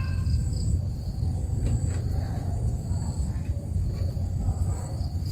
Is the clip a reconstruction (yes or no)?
no